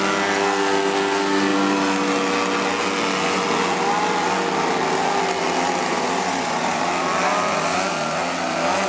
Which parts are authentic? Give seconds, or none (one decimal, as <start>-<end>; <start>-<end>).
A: 0.0-5.9; 6.9-8.9